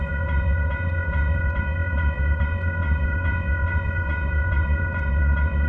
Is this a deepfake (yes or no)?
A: yes